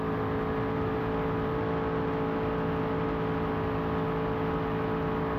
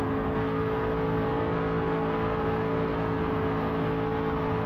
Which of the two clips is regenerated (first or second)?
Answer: second